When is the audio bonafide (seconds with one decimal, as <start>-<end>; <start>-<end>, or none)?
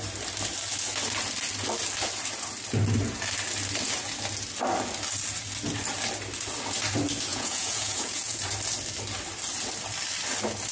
0.0-7.3; 8.4-10.7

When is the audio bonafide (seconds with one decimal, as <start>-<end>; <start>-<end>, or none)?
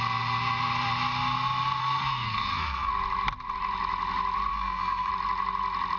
0.0-1.8; 2.9-4.5; 5.1-6.0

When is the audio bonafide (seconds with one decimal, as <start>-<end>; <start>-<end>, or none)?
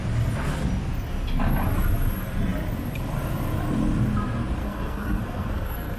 0.0-4.6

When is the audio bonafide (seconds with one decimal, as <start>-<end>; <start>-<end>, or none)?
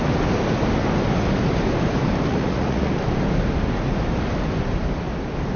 0.0-2.3; 2.9-5.6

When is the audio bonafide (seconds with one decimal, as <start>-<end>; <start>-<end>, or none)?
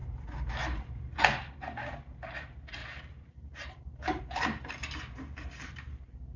1.2-2.8; 4.2-6.4